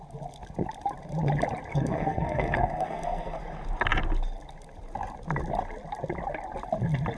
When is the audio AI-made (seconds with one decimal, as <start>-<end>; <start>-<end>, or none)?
1.7-3.4